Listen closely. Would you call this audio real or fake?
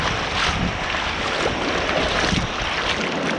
real